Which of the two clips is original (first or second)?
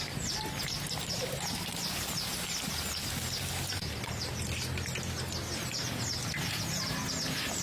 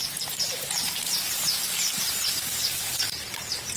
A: first